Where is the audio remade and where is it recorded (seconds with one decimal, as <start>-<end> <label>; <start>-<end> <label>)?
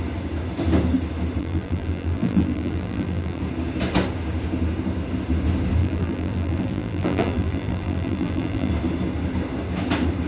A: 0.0-1.4 recorded; 1.4-3.4 remade; 3.4-5.8 recorded; 5.8-8.7 remade; 8.7-10.3 recorded